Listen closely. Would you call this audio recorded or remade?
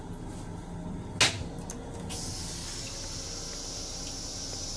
recorded